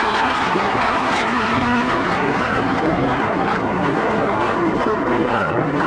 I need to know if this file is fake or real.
fake